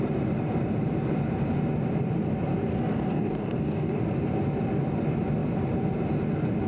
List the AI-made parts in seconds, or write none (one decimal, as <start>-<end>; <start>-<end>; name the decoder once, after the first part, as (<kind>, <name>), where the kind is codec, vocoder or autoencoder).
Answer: 2.7-4.0 (codec, DAC)